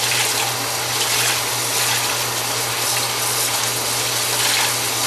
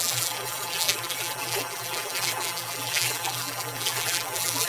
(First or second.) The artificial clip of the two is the second